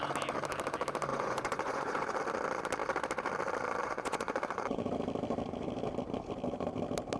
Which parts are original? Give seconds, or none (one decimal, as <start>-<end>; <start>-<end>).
0.0-1.1; 2.2-3.8; 4.9-7.2